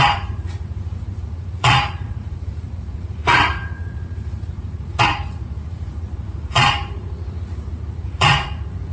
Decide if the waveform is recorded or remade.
remade